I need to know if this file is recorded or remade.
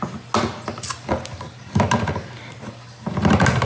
recorded